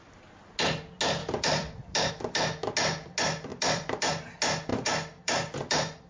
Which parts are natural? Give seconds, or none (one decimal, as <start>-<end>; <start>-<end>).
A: 0.0-1.2; 2.1-3.5; 4.1-4.7